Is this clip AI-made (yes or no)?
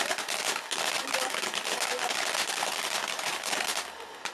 no